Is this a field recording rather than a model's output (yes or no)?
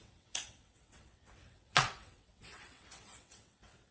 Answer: no